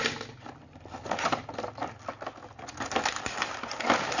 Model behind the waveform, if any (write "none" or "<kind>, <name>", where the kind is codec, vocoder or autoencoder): none